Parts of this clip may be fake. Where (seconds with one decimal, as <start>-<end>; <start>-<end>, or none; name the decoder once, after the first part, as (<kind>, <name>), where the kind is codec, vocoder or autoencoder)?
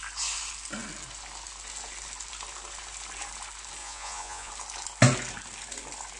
3.8-4.5 (vocoder, Vocos)